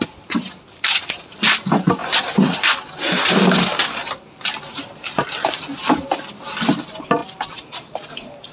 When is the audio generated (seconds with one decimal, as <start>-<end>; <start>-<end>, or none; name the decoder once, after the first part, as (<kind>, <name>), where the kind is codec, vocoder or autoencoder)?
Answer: none